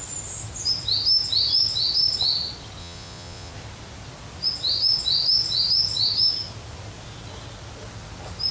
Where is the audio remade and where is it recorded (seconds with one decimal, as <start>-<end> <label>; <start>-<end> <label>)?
0.0-2.8 recorded; 2.8-3.5 remade; 3.5-8.5 recorded